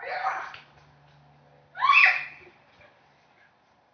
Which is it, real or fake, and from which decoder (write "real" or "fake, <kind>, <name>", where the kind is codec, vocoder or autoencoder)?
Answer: real